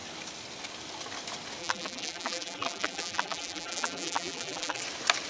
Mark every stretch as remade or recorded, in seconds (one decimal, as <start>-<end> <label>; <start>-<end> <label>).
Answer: 0.0-1.6 recorded; 1.6-4.8 remade; 4.8-5.3 recorded